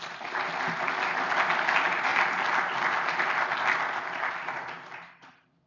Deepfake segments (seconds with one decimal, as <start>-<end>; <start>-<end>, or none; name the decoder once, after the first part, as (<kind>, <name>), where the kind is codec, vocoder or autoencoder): none